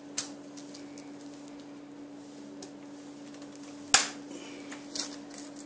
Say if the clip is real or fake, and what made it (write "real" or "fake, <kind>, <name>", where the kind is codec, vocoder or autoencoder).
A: real